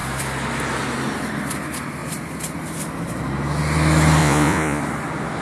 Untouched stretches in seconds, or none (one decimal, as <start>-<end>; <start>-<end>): 0.0-4.2; 4.8-5.4